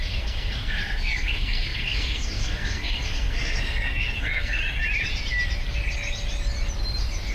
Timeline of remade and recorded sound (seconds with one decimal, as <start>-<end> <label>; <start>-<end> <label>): 0.0-4.6 remade; 4.6-7.3 recorded